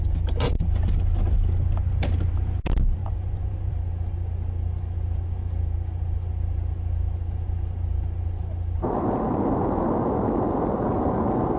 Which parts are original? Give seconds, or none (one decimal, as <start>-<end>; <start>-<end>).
0.0-3.0; 3.7-11.6